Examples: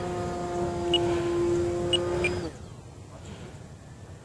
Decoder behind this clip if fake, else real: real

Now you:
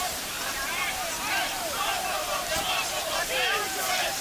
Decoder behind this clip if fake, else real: fake, vocoder, BigVGAN v2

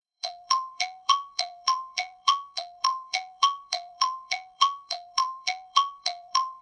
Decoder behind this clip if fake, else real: fake, vocoder, BigVGAN v2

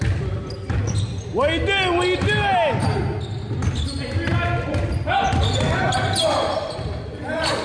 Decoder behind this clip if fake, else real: real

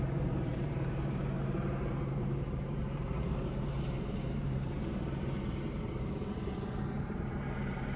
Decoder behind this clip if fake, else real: fake, vocoder, BigVGAN v2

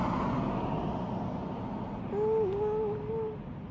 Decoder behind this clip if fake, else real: real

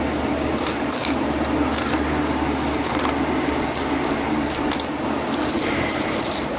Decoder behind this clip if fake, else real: real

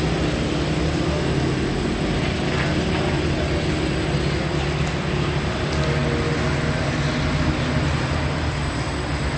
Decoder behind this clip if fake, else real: real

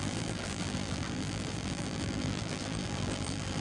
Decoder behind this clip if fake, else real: fake, vocoder, BigVGAN v2